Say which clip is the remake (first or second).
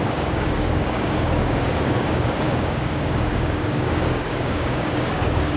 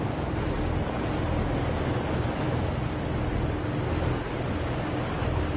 first